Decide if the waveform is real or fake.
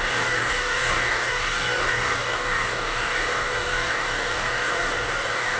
fake